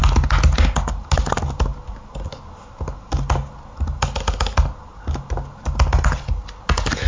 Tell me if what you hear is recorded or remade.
recorded